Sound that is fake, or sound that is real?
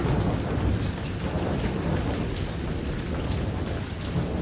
real